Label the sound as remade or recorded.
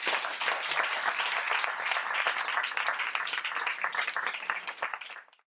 recorded